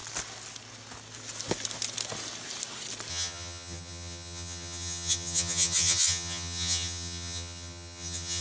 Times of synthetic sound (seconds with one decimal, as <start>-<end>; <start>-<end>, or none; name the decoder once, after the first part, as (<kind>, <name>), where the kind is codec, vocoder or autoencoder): 3.1-8.4 (vocoder, HiFi-GAN)